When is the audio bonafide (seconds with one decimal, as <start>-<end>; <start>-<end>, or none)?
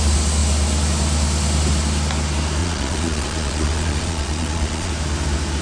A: 0.0-2.6; 4.9-5.6